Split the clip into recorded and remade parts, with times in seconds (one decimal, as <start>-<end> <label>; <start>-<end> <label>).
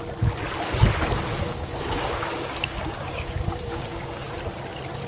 0.0-1.3 recorded; 1.3-4.4 remade; 4.4-5.1 recorded